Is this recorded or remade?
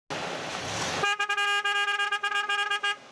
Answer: recorded